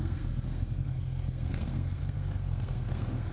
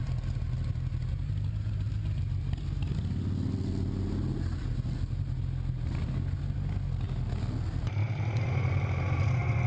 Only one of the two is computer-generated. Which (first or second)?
first